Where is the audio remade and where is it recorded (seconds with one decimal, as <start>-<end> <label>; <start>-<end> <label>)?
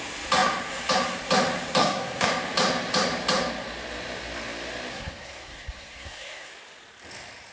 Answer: 0.0-1.8 recorded; 1.8-2.3 remade; 2.3-4.9 recorded; 4.9-6.5 remade; 6.5-7.5 recorded